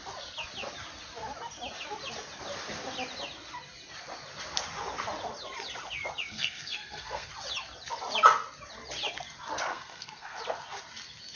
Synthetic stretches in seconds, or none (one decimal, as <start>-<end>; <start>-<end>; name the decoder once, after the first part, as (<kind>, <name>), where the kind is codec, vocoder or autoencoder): 6.3-7.3 (codec, SNAC); 9.7-10.4